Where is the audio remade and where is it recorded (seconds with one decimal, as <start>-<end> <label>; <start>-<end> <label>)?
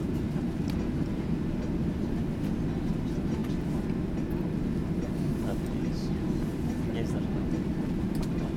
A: 0.0-1.4 remade; 1.4-8.6 recorded